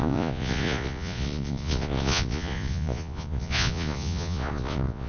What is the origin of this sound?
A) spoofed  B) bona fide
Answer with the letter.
A